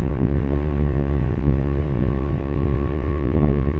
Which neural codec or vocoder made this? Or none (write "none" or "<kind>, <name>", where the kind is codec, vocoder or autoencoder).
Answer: vocoder, WaveNeXt